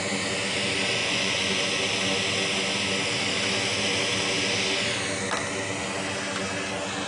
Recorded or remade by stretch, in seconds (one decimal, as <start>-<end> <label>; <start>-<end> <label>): 0.0-1.0 recorded; 1.0-1.6 remade; 1.6-7.1 recorded